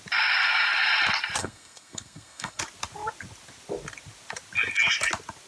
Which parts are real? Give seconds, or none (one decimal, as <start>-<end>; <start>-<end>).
0.0-1.4; 2.6-5.5